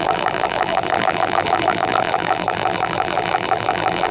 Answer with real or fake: fake